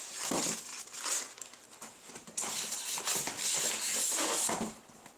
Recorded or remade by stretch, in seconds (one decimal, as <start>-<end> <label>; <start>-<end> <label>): 0.0-5.2 recorded